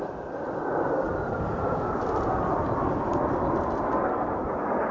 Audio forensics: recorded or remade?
recorded